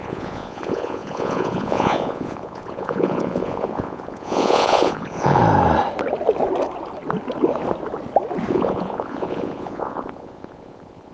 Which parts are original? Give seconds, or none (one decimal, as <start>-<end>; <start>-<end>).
5.4-8.5